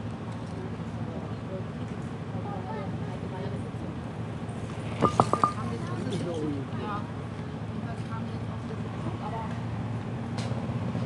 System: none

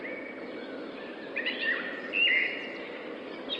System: none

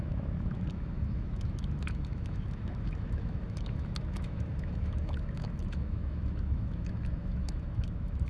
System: autoencoder, DAC-VAE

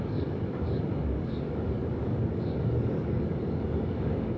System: codec, DAC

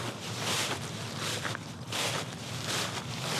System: none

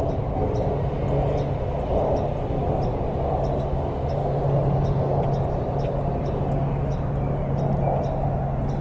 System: none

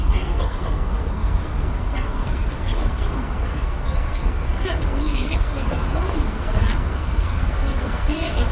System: codec, SNAC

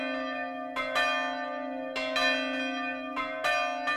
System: none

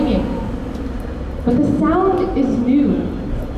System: none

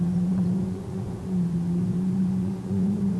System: vocoder, Vocos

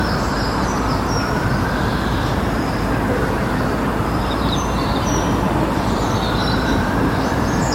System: vocoder, BigVGAN v2